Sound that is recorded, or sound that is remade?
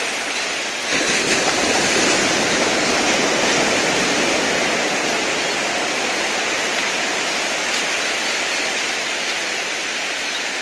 recorded